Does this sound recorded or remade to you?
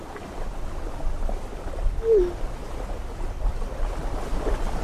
recorded